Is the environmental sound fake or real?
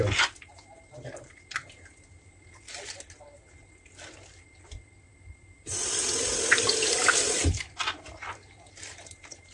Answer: fake